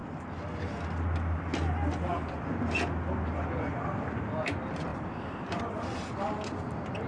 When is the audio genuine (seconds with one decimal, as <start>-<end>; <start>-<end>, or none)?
0.0-4.9; 5.6-7.1